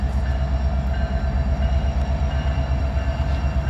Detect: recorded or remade recorded